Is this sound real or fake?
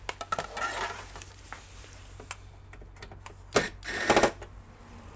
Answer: real